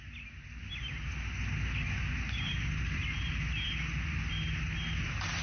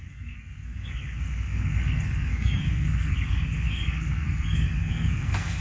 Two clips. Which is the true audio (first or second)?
first